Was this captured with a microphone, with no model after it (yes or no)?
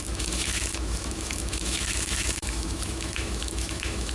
no